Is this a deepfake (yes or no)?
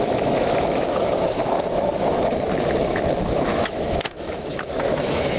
yes